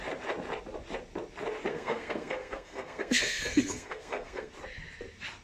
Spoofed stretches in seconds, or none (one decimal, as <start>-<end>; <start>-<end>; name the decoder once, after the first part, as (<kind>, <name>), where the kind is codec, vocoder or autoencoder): 1.7-4.5 (codec, SNAC)